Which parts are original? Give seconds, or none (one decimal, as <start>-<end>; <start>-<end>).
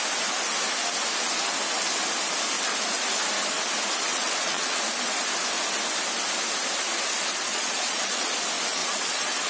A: 0.0-4.1; 4.8-7.5; 8.3-8.8